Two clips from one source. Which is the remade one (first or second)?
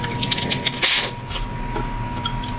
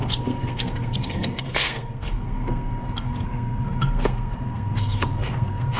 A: second